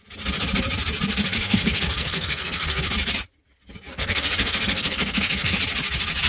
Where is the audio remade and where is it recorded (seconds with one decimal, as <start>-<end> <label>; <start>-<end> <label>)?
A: 0.0-1.4 recorded; 1.4-2.8 remade; 2.8-3.9 recorded; 3.9-5.6 remade; 5.6-6.3 recorded